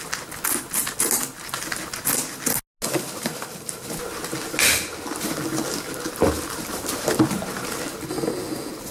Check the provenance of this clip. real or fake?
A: real